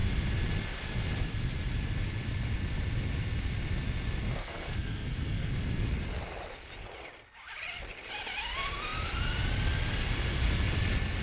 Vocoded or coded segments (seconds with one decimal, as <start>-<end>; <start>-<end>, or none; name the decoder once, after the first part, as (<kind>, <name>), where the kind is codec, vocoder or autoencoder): 4.4-5.5 (codec, SNAC)